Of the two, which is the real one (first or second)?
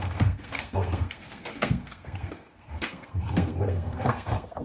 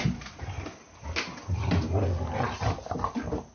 second